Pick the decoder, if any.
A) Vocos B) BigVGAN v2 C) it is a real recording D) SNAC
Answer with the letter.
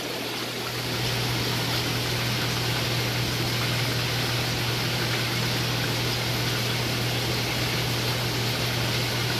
C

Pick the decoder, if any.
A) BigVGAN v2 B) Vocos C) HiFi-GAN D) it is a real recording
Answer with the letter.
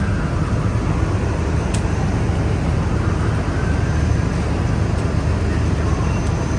D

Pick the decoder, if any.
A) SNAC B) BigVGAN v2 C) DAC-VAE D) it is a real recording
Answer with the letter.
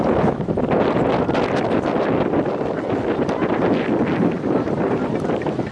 D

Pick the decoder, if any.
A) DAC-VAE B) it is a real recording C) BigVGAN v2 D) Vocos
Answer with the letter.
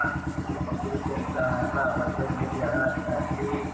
B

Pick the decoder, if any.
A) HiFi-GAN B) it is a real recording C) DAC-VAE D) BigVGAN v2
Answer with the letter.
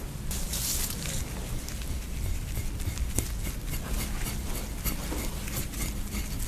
B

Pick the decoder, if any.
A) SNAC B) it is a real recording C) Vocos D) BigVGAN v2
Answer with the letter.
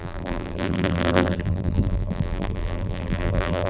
D